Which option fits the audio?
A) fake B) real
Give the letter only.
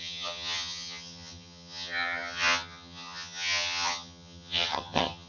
A